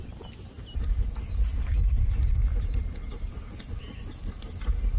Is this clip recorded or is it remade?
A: recorded